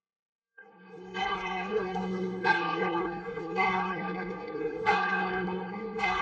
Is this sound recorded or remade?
remade